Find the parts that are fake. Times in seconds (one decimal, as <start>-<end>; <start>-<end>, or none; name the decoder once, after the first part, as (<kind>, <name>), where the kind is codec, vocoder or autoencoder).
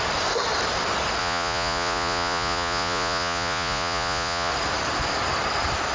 1.2-4.5 (vocoder, Vocos)